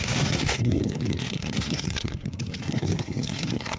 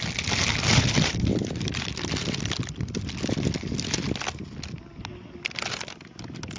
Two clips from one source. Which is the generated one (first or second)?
first